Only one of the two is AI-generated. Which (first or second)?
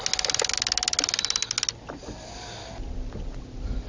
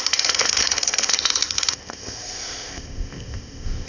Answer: second